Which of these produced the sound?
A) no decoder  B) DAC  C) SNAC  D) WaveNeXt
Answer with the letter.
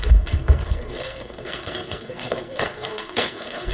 C